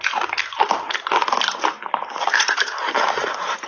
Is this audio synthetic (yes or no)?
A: no